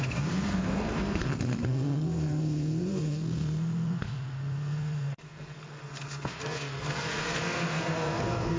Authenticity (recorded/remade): remade